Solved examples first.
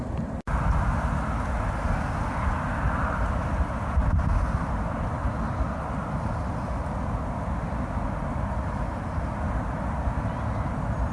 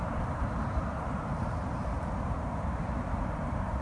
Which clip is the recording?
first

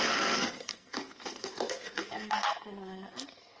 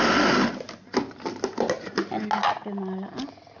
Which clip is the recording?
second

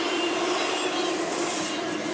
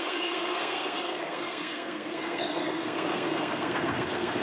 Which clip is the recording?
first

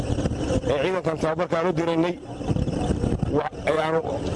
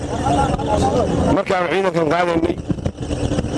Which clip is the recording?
second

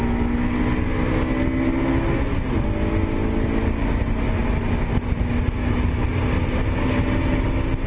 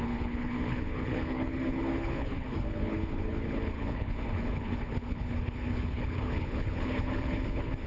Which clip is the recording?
first